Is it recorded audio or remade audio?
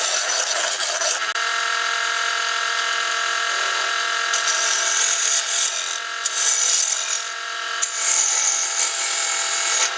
recorded